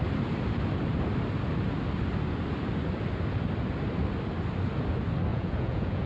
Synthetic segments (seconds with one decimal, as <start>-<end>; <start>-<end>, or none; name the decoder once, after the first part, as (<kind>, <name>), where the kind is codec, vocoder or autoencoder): 5.3-6.1 (vocoder, Vocos)